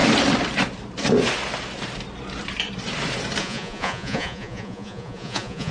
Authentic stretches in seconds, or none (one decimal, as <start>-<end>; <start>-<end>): 0.0-3.4